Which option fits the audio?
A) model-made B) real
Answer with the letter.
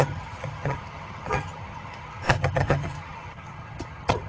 A